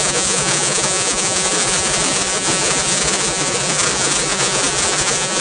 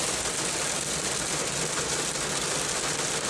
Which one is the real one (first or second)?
second